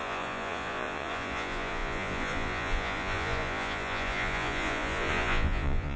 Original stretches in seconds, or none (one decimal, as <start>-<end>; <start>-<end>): none